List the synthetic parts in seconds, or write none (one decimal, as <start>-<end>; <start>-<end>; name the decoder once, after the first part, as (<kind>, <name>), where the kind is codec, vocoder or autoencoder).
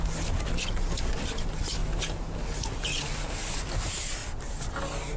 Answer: none